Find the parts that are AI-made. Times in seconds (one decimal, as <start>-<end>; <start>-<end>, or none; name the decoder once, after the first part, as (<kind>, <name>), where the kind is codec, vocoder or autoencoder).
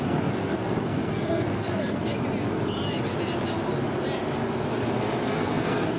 0.0-2.0 (codec, SNAC); 5.4-6.0